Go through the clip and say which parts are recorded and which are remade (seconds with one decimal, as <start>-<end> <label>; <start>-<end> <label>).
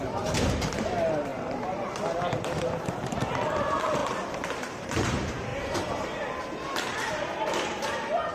0.0-1.3 remade; 1.3-2.4 recorded; 2.4-8.3 remade